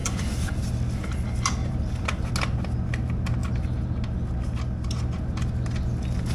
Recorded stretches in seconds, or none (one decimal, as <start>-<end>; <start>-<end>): 0.6-1.6; 2.3-6.3